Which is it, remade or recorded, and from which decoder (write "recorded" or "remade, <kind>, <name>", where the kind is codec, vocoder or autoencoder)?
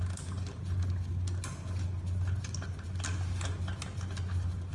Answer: recorded